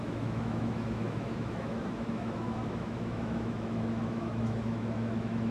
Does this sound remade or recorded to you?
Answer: remade